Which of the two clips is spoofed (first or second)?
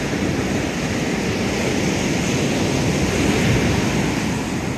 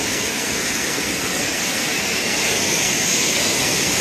second